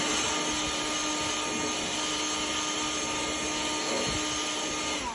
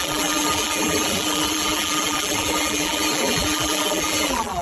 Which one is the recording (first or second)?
first